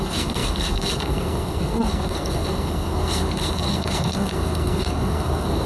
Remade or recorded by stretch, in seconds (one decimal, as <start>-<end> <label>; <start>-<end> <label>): 0.0-5.7 remade